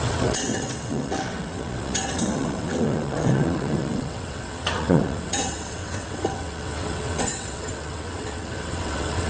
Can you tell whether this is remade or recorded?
remade